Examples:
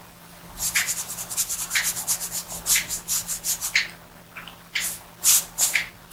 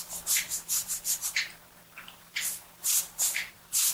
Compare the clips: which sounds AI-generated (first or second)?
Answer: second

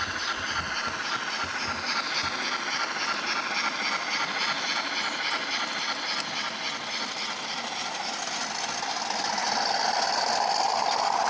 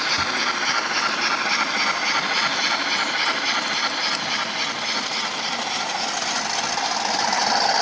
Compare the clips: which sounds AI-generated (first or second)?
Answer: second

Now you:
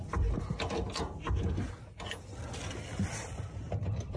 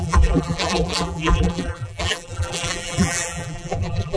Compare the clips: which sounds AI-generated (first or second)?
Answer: second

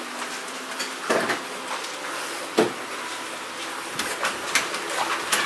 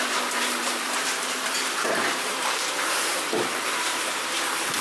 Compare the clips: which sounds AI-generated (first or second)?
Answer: second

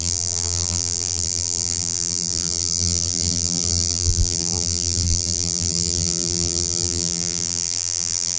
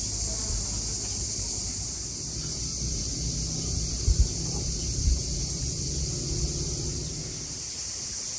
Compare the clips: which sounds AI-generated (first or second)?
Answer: first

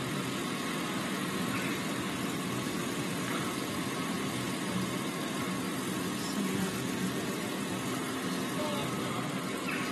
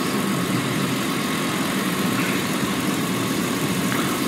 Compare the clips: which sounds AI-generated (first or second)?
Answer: second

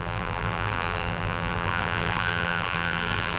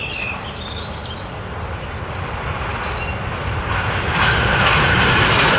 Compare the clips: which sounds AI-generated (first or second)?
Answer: first